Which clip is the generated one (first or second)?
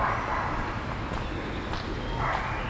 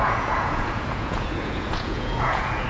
second